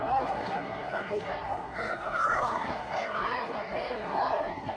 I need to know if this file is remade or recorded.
remade